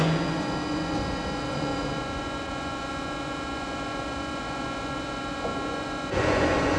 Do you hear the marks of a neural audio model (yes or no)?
yes